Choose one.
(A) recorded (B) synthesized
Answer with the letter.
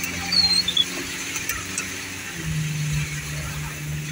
A